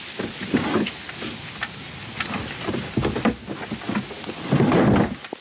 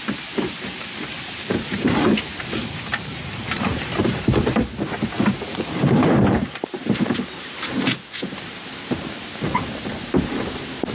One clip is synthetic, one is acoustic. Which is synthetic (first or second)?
second